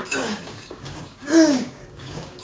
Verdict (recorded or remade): remade